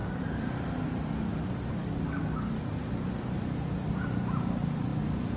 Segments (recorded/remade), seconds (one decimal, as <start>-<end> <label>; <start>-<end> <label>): 0.0-1.8 recorded; 1.8-2.6 remade; 2.6-5.4 recorded